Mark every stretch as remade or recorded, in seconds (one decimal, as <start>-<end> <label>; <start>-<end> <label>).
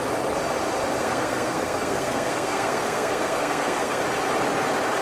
0.0-1.0 recorded; 1.0-4.0 remade; 4.0-5.0 recorded